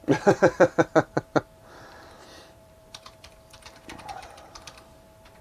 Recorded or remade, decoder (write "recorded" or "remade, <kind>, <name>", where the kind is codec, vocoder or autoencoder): remade, vocoder, BigVGAN v2